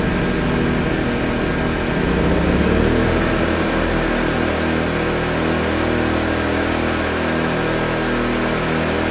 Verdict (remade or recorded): recorded